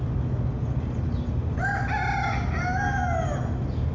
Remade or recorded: recorded